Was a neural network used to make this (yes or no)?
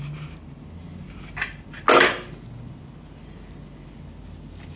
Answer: no